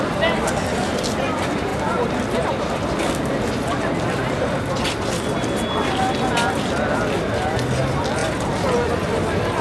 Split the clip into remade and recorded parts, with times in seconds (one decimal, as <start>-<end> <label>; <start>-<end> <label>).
0.0-9.6 recorded